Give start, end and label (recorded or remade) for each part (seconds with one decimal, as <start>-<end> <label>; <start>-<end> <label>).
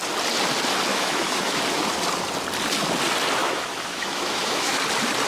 0.0-0.9 recorded; 0.9-1.6 remade; 1.6-3.4 recorded; 3.4-4.8 remade; 4.8-5.3 recorded